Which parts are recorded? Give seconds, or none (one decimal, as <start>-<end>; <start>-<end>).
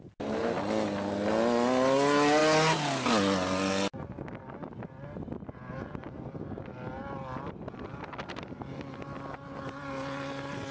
0.0-10.7